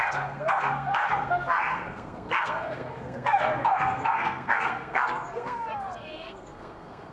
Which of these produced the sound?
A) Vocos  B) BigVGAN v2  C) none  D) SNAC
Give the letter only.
D